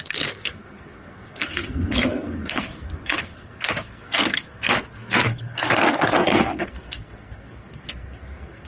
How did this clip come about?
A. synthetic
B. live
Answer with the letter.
A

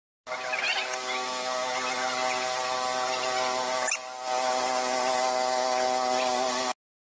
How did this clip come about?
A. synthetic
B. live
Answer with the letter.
B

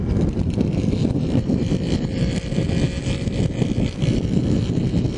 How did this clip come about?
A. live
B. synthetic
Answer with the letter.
A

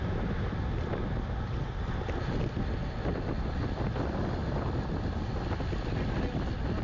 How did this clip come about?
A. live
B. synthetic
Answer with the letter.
A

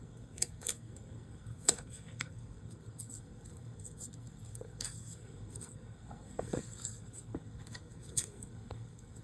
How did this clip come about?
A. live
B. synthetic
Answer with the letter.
B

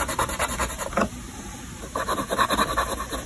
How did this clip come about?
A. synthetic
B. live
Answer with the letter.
B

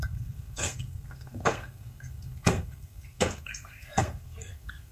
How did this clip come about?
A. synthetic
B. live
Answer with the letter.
A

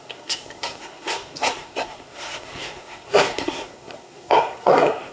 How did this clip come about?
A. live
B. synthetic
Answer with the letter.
B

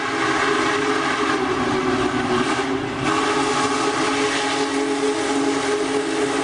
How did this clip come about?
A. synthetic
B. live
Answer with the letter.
B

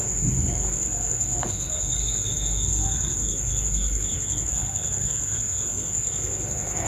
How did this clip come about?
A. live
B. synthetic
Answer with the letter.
B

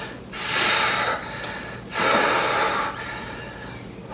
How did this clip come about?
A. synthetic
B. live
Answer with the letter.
B